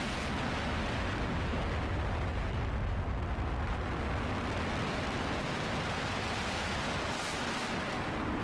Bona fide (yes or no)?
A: yes